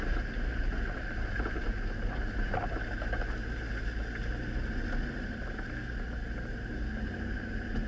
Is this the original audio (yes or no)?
yes